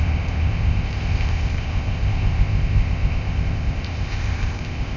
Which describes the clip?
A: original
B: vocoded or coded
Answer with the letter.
B